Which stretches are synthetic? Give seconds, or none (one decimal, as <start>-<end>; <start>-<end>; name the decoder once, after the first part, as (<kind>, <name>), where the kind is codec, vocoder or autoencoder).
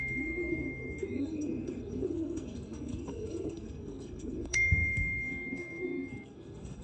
0.0-6.8 (codec, SNAC)